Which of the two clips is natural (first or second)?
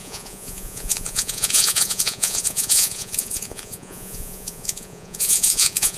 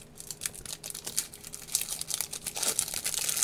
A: second